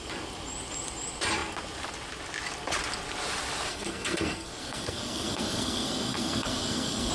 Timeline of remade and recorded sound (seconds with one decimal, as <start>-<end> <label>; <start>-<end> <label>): 0.0-3.7 recorded; 3.7-7.1 remade